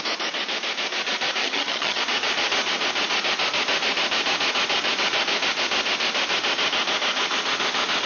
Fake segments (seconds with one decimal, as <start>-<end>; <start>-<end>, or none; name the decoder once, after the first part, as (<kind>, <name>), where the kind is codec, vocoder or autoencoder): 1.4-2.0 (vocoder, HiFi-GAN)